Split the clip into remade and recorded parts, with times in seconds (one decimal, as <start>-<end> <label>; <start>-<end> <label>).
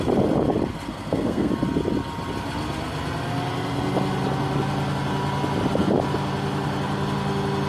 0.0-0.9 recorded; 0.9-1.5 remade; 1.5-7.7 recorded